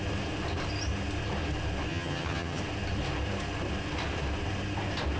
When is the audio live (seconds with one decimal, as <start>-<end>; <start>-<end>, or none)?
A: 0.0-1.9; 2.6-5.2